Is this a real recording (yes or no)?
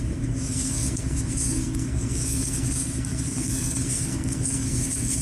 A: no